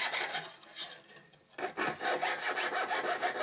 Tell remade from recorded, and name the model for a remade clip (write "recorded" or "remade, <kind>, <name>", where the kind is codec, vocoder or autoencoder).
recorded